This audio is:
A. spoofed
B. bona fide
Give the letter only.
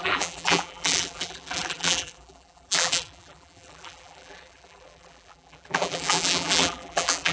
A